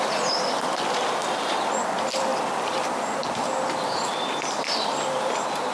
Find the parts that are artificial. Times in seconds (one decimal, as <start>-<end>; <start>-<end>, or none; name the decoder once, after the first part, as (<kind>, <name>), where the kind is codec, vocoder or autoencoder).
0.0-2.3 (vocoder, BigVGAN v2); 3.8-5.7